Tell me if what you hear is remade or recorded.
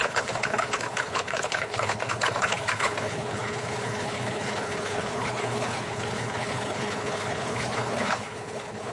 remade